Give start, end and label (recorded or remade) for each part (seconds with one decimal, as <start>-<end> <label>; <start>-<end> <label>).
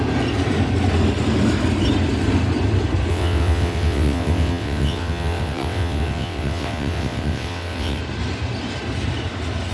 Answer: 0.0-3.1 recorded; 3.1-8.0 remade; 8.0-9.7 recorded